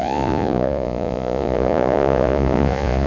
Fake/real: fake